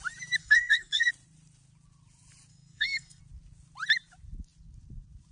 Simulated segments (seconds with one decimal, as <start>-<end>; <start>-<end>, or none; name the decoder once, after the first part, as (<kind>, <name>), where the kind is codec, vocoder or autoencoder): 0.4-1.1 (codec, SNAC); 2.5-3.2